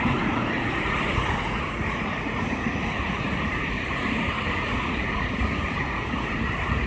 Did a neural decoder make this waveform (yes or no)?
yes